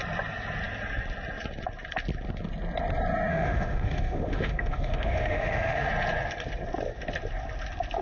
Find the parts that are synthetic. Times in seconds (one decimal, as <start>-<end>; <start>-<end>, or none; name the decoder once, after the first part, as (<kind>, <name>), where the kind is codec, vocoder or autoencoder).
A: 3.3-5.9 (autoencoder, DAC-VAE)